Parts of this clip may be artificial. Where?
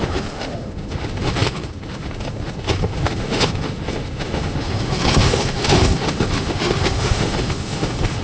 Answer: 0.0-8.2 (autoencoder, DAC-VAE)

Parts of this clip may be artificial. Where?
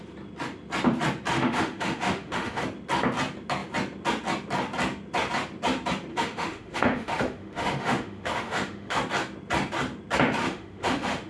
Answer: 1.3-2.6 (autoencoder, DAC-VAE); 6.1-9.0; 10.4-11.3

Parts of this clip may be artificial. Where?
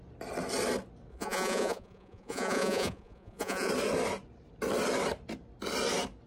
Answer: 1.1-3.7 (vocoder, Vocos)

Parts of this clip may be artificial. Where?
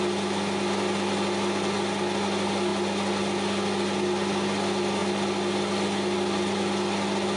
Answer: none